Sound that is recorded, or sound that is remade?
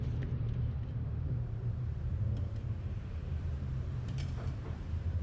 remade